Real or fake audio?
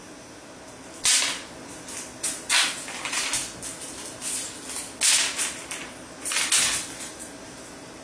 real